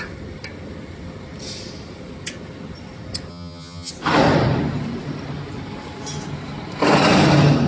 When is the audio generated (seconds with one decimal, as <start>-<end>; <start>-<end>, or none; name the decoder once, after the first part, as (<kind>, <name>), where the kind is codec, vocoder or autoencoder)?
3.3-3.9 (vocoder, HiFi-GAN)